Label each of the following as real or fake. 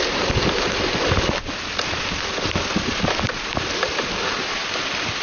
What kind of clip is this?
real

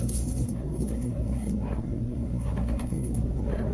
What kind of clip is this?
fake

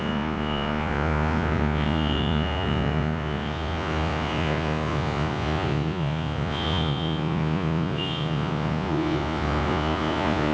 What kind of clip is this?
fake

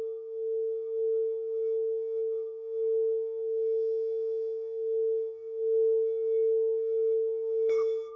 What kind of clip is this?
fake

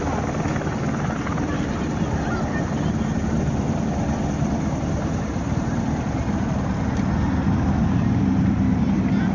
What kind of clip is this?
real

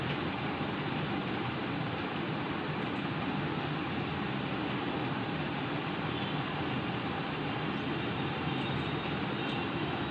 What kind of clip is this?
real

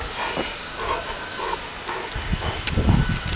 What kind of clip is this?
real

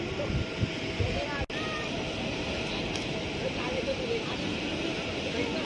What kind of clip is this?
real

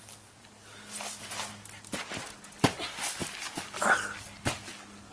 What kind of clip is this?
real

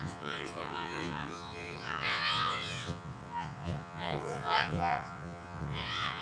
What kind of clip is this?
fake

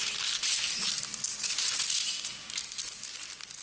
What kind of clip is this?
real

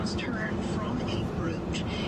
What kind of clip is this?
fake